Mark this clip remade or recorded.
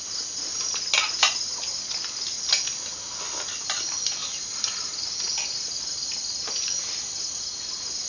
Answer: recorded